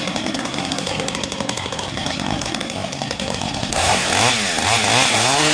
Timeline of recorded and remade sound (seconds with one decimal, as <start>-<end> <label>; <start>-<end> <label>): 0.0-4.1 remade; 4.1-5.1 recorded; 5.1-5.5 remade

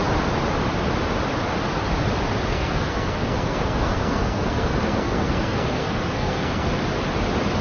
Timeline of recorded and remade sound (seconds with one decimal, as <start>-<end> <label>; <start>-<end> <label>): 0.0-2.5 recorded; 2.5-6.7 remade; 6.7-7.6 recorded

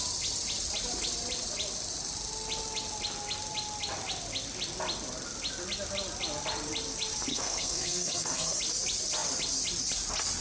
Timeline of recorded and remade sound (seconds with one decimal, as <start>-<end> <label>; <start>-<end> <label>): 0.0-7.3 recorded; 7.3-8.6 remade; 8.6-10.4 recorded

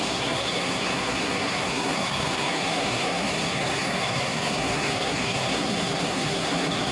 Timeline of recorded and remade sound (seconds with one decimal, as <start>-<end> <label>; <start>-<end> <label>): 0.0-6.9 remade

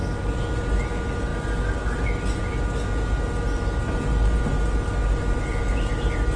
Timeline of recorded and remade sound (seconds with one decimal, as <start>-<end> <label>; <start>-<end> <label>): 0.0-6.4 recorded

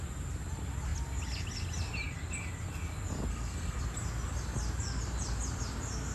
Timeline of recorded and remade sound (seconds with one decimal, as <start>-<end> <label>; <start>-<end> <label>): 0.0-3.3 recorded; 3.3-3.8 remade; 3.8-6.1 recorded

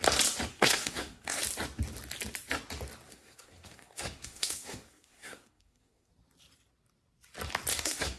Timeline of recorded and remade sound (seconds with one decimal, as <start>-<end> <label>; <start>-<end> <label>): 0.0-0.5 recorded; 0.5-1.4 remade; 1.4-3.1 recorded; 3.1-6.1 remade; 6.1-7.7 recorded; 7.7-8.2 remade